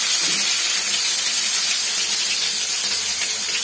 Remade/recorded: recorded